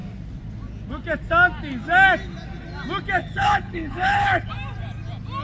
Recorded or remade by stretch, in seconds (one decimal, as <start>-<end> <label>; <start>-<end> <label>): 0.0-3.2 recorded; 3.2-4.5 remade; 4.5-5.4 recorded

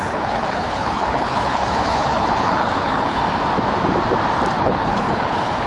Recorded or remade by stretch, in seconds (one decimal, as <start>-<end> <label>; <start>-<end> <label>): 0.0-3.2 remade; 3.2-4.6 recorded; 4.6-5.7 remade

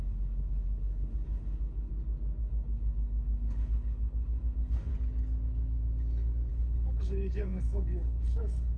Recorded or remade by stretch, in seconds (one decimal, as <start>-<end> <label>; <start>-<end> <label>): 0.0-1.9 remade; 1.9-2.4 recorded; 2.4-4.9 remade; 4.9-6.5 recorded; 6.5-8.8 remade

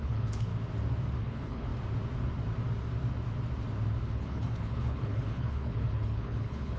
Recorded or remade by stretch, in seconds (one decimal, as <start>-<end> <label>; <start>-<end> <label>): 0.0-0.5 remade; 0.5-1.2 recorded; 1.2-1.7 remade; 1.7-4.1 recorded; 4.1-6.8 remade